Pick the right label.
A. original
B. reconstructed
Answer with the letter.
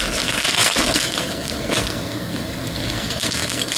B